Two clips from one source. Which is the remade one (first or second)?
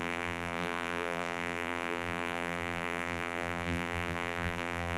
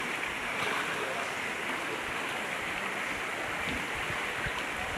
first